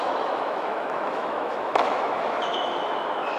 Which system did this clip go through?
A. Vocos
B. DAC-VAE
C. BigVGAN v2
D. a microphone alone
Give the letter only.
B